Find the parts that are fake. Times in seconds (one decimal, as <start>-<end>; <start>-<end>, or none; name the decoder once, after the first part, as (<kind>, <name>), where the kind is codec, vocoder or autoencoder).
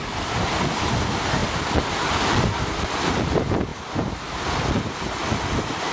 none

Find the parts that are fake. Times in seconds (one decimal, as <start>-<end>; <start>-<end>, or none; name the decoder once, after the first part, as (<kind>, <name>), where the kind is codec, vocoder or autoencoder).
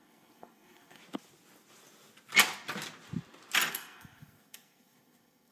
0.0-1.0 (codec, SNAC); 3.7-5.5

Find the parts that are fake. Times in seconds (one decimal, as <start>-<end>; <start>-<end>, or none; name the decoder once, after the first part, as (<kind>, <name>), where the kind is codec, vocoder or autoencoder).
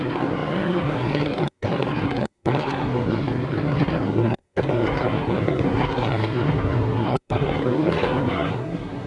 0.0-9.1 (codec, SNAC)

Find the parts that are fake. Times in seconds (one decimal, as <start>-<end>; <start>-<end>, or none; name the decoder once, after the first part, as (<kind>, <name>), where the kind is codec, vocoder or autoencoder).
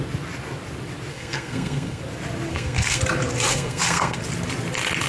1.1-2.0 (codec, SNAC); 2.5-3.0; 3.5-4.2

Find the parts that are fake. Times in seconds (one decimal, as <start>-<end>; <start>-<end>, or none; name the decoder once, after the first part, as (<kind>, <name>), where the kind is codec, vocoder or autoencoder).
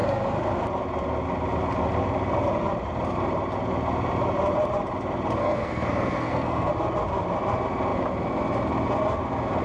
5.4-6.7 (codec, SNAC)